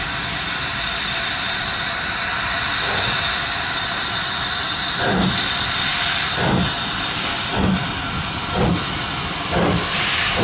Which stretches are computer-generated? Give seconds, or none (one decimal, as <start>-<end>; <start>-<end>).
none